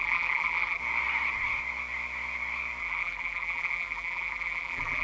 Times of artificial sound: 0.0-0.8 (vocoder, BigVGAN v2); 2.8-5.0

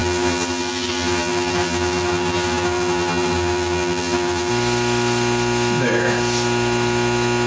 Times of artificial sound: 0.0-4.5 (vocoder, BigVGAN v2)

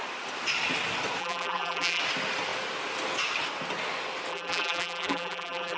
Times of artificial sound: 1.2-2.0 (vocoder, BigVGAN v2); 4.3-5.8

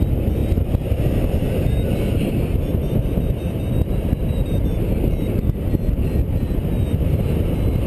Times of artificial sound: 2.8-5.6 (vocoder, BigVGAN v2)

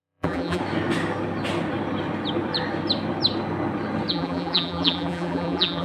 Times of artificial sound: 0.0-0.6 (vocoder, BigVGAN v2); 4.1-5.8